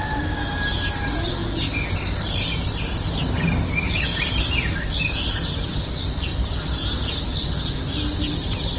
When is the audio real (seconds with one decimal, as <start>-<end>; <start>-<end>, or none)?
0.0-4.1; 4.9-6.3; 7.2-8.8

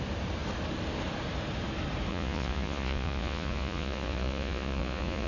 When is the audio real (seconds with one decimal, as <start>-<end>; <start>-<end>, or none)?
0.0-2.1

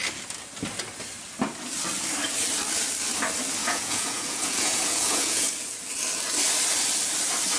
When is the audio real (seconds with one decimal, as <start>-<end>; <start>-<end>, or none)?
0.0-3.6; 5.5-7.6